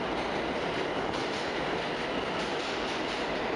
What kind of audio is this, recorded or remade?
recorded